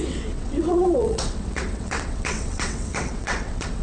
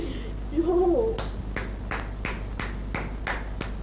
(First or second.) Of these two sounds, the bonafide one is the second